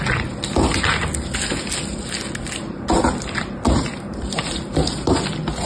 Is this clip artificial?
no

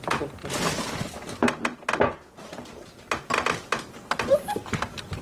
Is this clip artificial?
no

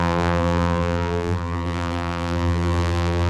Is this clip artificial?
yes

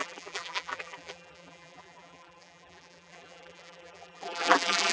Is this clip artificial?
yes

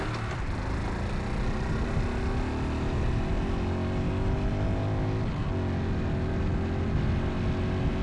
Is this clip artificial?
no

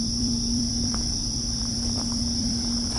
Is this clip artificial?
yes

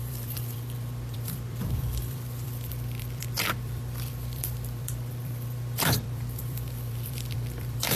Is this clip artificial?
yes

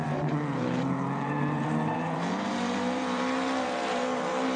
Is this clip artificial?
yes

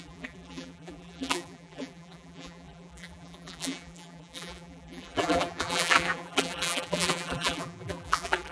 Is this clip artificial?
yes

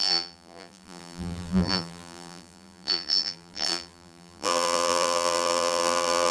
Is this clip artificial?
yes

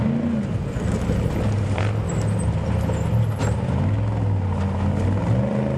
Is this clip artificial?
no